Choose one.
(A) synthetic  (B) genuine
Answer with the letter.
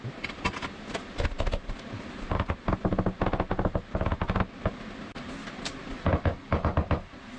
B